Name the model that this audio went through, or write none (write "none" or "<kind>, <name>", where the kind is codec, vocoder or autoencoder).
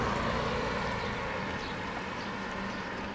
none